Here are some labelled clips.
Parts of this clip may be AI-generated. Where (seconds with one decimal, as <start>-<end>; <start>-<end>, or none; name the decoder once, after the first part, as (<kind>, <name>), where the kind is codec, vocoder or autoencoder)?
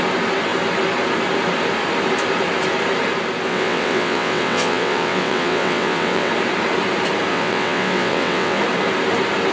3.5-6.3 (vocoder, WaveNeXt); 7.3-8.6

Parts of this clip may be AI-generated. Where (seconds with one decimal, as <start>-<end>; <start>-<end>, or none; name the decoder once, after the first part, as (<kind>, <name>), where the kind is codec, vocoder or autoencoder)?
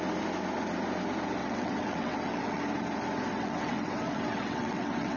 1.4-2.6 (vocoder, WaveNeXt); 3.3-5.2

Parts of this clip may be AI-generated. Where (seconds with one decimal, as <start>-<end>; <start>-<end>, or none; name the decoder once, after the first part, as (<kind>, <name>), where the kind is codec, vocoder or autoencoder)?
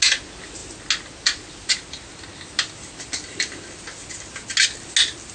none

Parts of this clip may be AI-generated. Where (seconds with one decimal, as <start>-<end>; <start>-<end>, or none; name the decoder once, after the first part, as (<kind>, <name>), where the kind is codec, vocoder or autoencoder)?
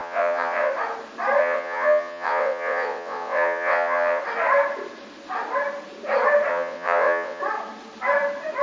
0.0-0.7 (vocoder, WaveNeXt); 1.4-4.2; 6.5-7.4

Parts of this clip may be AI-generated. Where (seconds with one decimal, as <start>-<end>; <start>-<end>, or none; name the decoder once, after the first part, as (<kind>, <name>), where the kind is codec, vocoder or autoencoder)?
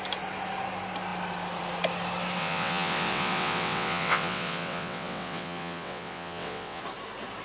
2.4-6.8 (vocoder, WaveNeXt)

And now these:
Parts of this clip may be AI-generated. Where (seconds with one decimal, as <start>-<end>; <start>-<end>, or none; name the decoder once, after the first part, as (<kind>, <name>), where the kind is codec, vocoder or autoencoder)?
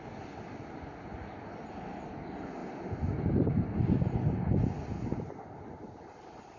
none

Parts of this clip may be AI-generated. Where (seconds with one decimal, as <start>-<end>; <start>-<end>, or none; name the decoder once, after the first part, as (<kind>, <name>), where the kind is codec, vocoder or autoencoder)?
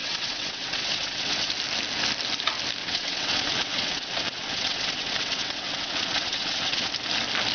0.0-1.5 (vocoder, WaveNeXt); 2.8-6.9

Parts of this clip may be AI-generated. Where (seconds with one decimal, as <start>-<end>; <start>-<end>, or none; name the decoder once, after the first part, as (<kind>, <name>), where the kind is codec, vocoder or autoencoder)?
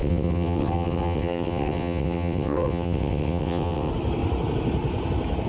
0.0-3.9 (vocoder, WaveNeXt)